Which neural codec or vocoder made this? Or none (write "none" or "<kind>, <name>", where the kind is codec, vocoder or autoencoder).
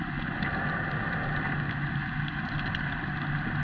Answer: none